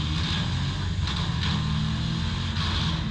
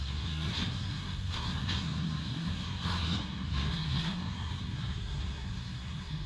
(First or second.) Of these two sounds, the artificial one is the second